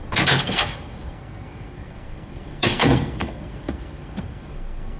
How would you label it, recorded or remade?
remade